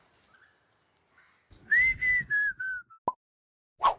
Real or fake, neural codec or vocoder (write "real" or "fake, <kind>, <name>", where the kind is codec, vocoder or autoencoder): real